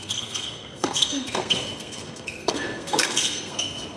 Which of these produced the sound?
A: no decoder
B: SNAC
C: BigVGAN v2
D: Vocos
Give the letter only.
B